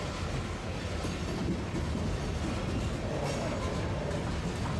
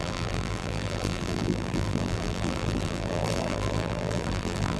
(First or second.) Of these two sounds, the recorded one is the first